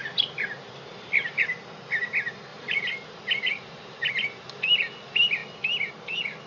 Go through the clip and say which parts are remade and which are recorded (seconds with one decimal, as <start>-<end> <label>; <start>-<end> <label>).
0.0-1.4 remade; 1.4-2.5 recorded; 2.5-4.1 remade; 4.1-6.5 recorded